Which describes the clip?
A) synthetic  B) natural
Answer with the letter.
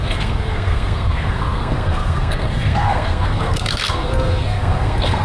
A